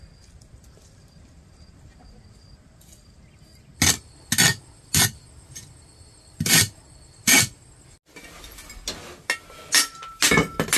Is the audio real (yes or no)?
yes